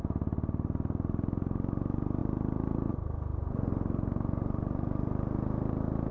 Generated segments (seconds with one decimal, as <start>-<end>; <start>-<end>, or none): 3.3-5.3